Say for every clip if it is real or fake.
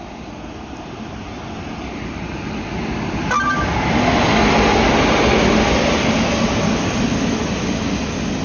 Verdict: real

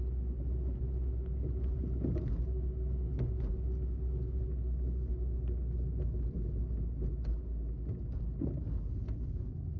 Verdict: real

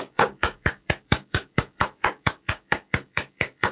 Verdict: fake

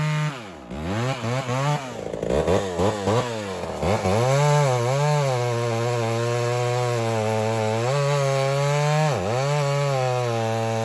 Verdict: real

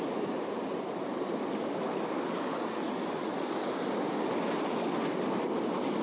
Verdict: real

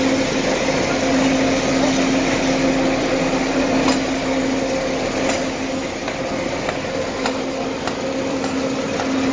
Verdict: real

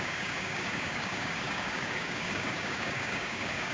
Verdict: fake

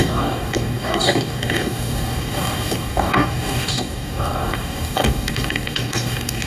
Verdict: fake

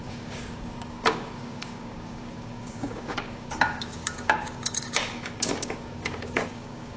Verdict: fake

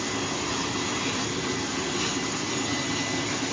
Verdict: real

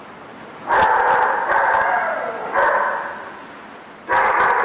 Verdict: real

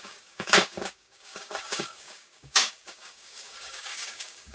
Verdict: fake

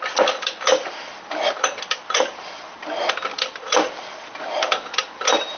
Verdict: real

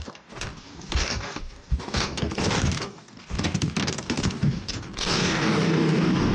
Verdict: fake